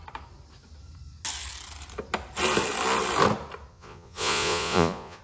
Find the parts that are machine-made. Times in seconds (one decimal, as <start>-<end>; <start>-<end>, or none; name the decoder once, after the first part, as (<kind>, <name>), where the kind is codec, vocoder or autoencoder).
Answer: 3.7-5.2 (vocoder, Vocos)